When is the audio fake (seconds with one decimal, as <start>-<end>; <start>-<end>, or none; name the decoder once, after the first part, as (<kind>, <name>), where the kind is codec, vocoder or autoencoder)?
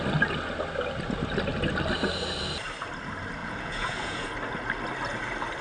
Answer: 3.4-4.3 (vocoder, Vocos)